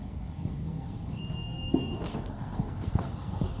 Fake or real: fake